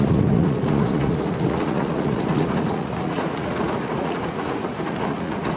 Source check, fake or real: fake